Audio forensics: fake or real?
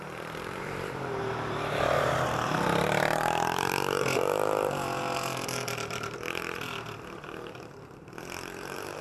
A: fake